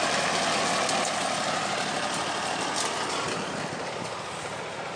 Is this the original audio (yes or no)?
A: yes